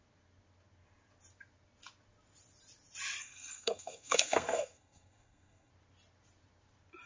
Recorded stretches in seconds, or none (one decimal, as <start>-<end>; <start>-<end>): 0.0-3.2; 5.7-7.1